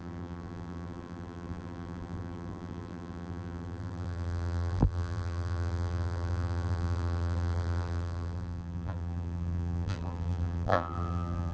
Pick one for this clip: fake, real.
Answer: fake